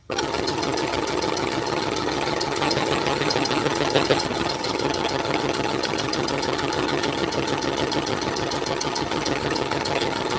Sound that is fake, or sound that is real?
fake